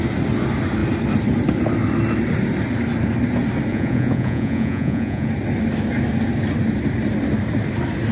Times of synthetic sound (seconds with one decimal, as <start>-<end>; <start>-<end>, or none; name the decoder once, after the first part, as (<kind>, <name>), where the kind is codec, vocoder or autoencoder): 3.7-5.3 (vocoder, Vocos)